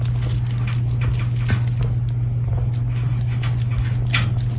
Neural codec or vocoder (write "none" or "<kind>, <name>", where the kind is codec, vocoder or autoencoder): none